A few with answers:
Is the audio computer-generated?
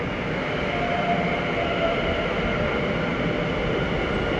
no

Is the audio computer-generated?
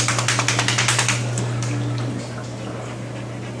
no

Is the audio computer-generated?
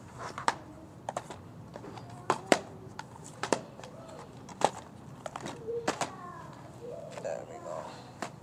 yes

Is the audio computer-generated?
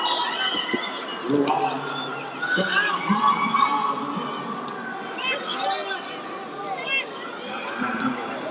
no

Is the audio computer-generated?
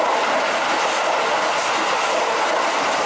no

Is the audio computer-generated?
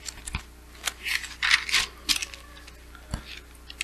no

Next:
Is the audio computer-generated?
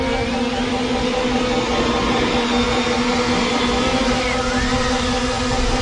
no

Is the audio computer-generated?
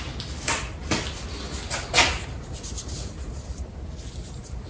no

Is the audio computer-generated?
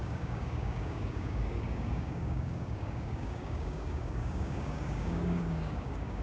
yes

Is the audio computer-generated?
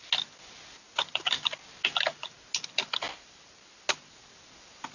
no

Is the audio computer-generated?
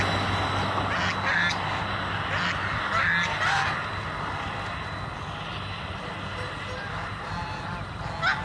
no